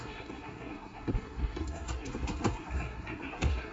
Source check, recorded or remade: remade